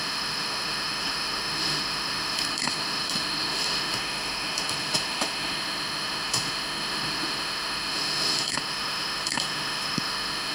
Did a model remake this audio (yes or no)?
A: yes